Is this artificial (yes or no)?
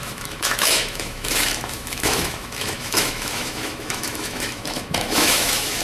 yes